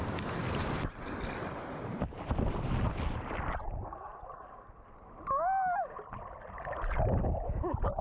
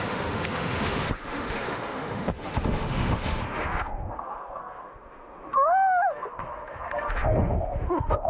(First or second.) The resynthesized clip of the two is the second